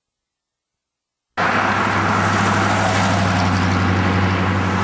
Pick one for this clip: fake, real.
real